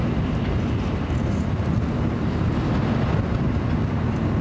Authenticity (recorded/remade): recorded